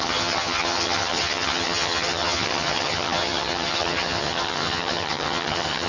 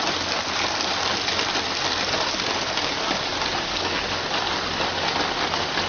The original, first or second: second